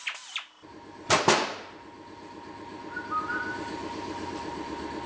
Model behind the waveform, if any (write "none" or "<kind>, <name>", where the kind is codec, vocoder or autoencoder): none